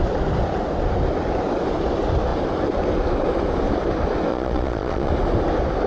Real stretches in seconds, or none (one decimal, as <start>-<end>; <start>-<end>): 0.0-4.3; 5.1-5.9